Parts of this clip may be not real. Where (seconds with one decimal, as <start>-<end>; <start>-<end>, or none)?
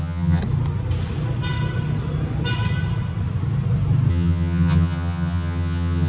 0.0-0.4; 4.1-6.1